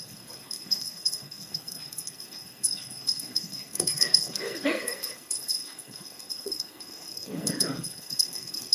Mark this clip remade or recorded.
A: remade